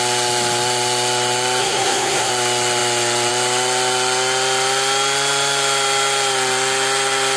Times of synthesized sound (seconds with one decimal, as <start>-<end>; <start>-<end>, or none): 1.6-2.3